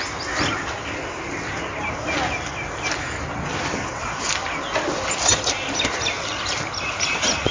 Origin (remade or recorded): recorded